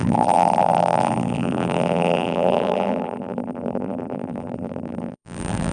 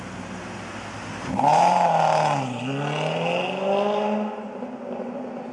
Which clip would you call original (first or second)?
second